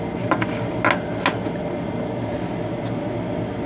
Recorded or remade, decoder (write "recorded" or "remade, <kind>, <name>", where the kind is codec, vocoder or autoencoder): recorded